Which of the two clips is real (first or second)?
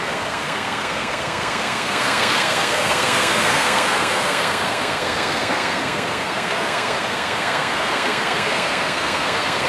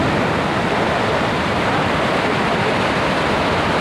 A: second